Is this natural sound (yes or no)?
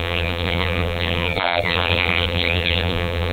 no